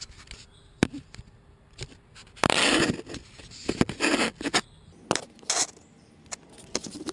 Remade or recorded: recorded